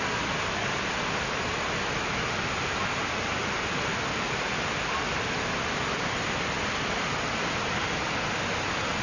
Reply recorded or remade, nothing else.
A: recorded